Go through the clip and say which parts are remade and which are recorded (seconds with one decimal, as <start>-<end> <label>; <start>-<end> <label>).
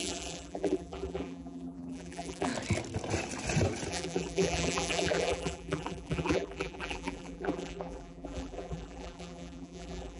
0.0-2.5 remade; 2.5-3.9 recorded; 3.9-10.2 remade